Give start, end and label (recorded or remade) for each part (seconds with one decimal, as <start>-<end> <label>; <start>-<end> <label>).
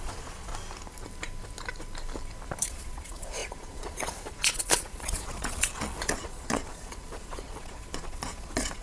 0.0-0.5 remade; 0.5-2.6 recorded; 2.6-8.8 remade